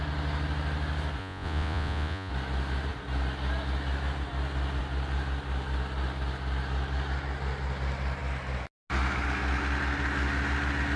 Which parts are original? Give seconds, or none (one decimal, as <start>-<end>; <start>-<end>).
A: 0.0-1.2; 2.3-11.0